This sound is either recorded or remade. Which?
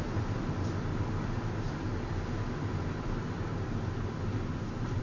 recorded